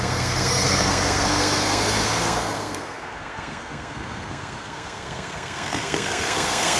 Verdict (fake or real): fake